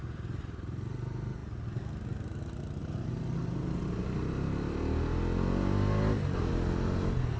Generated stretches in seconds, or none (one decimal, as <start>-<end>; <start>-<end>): none